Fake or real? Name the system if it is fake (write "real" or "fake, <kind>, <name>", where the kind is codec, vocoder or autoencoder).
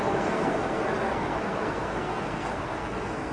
fake, codec, SNAC